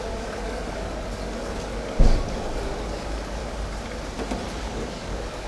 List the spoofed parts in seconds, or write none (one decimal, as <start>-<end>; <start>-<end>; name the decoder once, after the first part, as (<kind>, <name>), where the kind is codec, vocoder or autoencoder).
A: 0.0-3.4 (codec, DAC); 4.6-5.5